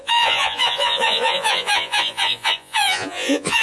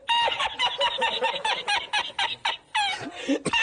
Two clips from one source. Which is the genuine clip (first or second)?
second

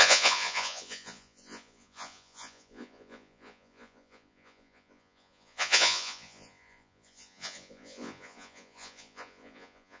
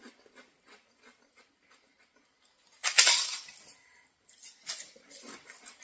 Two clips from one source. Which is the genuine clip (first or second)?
second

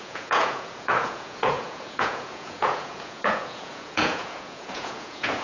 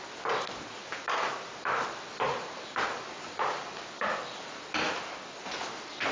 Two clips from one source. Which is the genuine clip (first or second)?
second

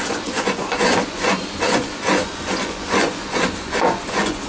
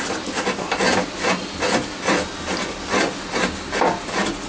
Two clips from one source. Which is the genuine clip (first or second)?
second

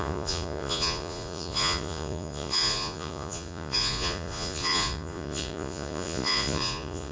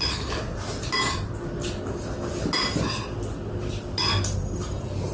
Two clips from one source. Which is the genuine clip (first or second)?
second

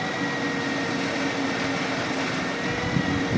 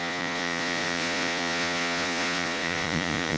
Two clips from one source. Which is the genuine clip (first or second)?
first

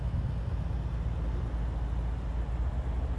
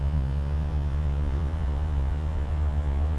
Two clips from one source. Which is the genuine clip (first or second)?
first